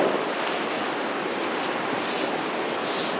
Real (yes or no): yes